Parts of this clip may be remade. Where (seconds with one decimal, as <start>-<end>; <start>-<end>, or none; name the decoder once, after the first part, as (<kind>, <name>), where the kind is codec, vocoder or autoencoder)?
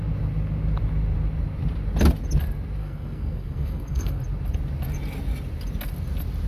2.8-4.2 (codec, SNAC)